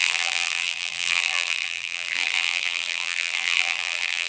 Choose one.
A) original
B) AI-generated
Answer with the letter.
B